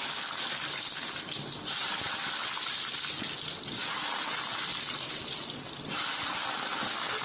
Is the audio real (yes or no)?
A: yes